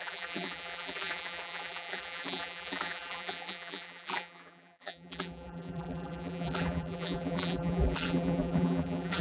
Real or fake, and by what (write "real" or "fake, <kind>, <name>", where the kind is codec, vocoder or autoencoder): fake, vocoder, BigVGAN v2